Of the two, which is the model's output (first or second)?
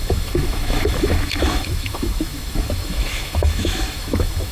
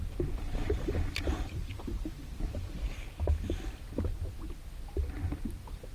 first